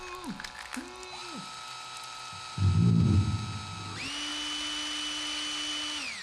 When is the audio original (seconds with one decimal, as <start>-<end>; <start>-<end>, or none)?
0.0-6.2